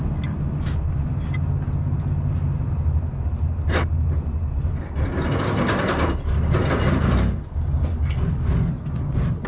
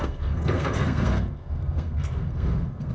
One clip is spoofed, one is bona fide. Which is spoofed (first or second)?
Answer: second